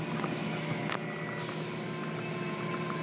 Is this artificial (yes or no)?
no